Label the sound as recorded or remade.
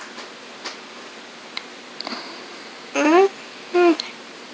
recorded